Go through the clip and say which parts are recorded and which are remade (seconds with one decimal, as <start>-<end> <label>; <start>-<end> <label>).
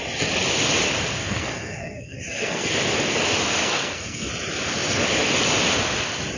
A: 0.0-1.2 recorded; 1.2-2.7 remade; 2.7-3.6 recorded; 3.6-4.3 remade; 4.3-6.4 recorded